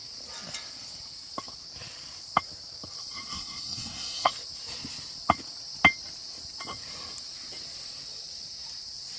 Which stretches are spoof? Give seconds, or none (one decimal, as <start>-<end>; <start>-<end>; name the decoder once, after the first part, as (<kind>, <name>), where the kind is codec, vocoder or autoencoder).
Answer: 3.3-4.3 (codec, SNAC)